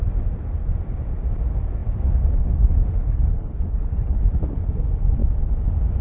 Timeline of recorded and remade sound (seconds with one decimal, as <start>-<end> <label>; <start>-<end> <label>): 0.0-3.0 recorded; 3.0-4.2 remade; 4.2-6.0 recorded